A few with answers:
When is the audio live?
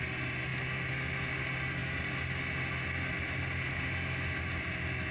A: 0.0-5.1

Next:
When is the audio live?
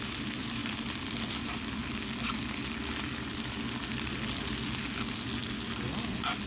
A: 0.0-6.5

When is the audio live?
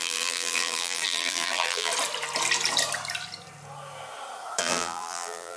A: 1.9-4.6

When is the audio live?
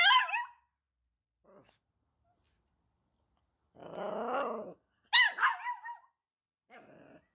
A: 0.0-7.3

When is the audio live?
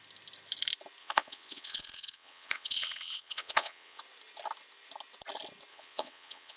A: 0.0-1.0; 4.0-5.7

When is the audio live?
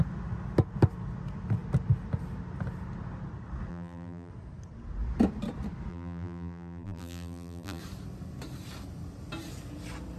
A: 0.0-3.7; 4.3-5.9; 7.8-10.2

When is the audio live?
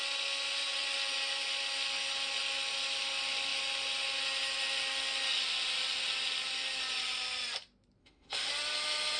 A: 0.0-8.0; 8.5-9.2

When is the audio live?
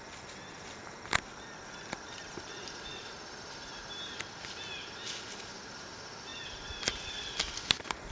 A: 0.0-8.1